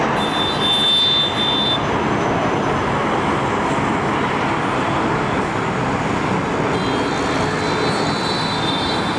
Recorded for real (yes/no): yes